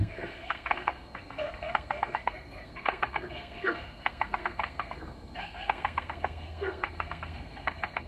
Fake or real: fake